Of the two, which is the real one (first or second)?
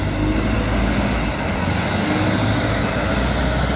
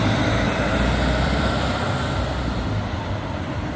first